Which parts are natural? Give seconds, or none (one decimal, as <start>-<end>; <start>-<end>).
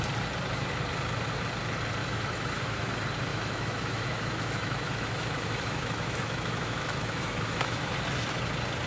0.0-2.0; 2.9-3.3; 7.9-8.9